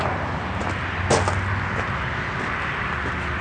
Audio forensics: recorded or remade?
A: recorded